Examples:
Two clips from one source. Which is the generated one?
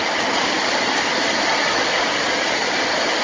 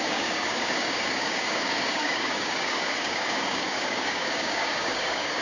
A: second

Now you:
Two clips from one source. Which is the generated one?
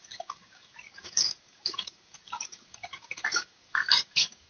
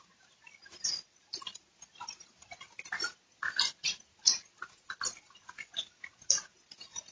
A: first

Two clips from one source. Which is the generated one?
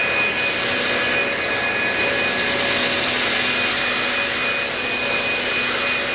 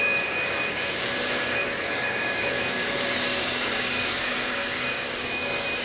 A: second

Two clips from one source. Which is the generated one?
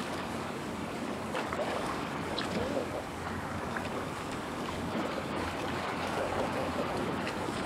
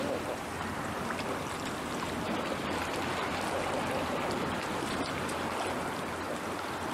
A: first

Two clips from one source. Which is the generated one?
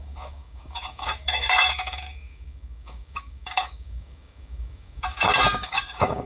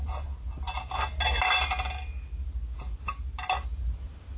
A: first